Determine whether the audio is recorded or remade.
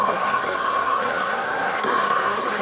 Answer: remade